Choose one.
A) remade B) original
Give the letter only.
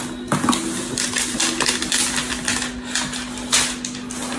B